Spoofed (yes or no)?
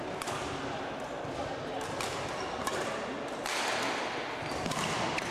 no